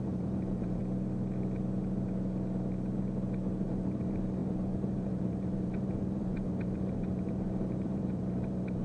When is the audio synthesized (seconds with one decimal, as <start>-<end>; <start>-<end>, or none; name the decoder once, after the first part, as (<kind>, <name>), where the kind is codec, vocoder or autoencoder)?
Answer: 0.0-0.8 (vocoder, BigVGAN v2); 3.6-8.8